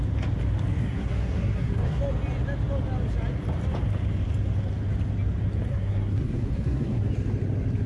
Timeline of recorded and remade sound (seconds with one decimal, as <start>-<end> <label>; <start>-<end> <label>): 0.0-0.8 recorded; 0.8-2.0 remade; 2.0-5.7 recorded; 5.7-7.1 remade; 7.1-7.9 recorded